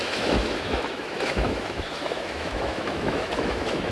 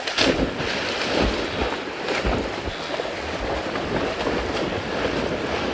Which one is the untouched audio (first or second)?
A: second